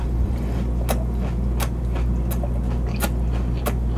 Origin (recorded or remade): recorded